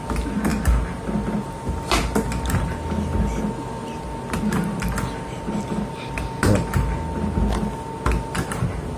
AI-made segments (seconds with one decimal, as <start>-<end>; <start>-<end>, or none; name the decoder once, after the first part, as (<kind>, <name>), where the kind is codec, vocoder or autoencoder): none